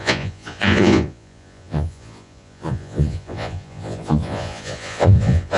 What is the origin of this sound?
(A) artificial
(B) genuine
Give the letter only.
A